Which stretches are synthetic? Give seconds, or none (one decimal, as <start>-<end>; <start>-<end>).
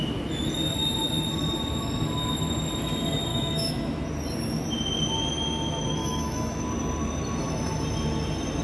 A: 3.3-4.0; 6.0-6.6